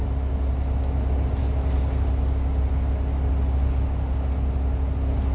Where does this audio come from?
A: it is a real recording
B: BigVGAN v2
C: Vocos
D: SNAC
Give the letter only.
A